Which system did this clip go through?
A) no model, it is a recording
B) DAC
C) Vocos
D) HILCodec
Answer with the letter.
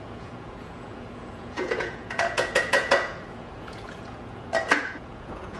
C